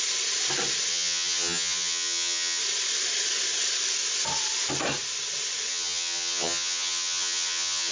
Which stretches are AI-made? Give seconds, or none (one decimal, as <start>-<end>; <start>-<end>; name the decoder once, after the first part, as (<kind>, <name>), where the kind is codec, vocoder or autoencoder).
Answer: 0.9-2.6 (vocoder, HiFi-GAN); 5.7-7.9